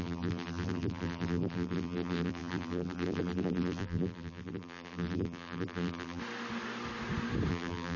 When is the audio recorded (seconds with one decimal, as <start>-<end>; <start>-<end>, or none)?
6.2-7.5